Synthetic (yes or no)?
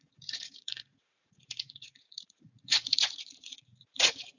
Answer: yes